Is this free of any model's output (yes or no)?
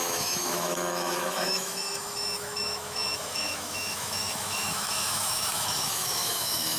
no